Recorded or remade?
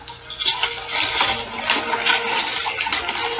recorded